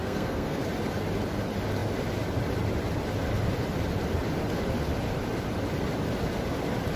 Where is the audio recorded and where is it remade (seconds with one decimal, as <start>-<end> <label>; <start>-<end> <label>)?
0.0-0.6 remade; 0.6-7.0 recorded